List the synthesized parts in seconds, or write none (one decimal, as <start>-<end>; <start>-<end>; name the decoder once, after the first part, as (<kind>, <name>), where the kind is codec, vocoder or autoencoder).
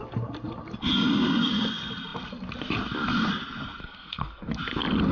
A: 3.8-4.5 (codec, SNAC)